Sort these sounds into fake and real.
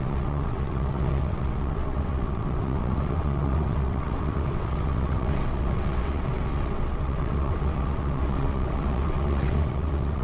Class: fake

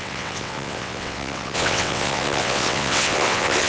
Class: fake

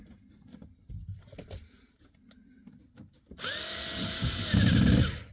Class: real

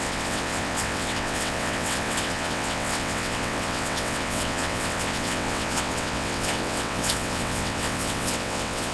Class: fake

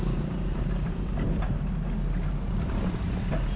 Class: real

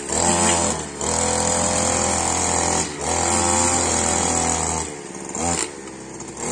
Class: real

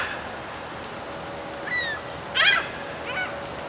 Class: real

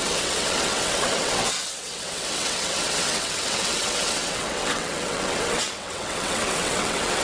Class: fake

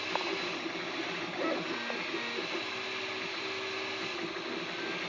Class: real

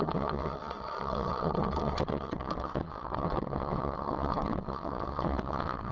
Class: fake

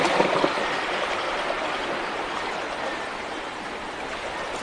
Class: real